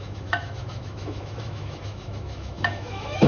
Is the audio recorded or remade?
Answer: remade